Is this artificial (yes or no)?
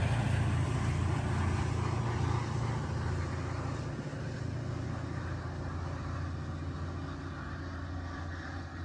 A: no